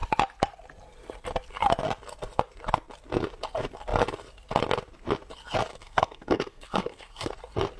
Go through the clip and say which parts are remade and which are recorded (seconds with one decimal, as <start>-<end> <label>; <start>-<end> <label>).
0.0-5.7 recorded; 5.7-7.3 remade; 7.3-7.8 recorded